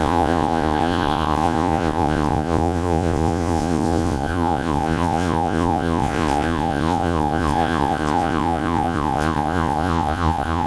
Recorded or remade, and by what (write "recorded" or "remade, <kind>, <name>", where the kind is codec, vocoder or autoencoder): remade, vocoder, Vocos